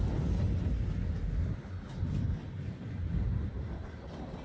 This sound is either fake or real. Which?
real